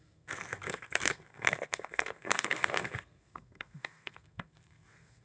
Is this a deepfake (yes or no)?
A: yes